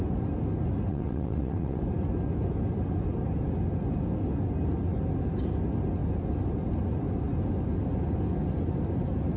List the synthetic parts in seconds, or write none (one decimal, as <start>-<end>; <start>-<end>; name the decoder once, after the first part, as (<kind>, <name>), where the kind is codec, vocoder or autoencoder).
0.9-1.8 (vocoder, WaveNeXt)